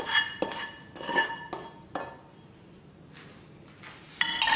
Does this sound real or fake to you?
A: real